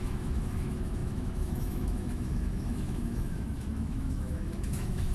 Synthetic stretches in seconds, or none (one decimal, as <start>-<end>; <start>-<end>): 0.0-5.1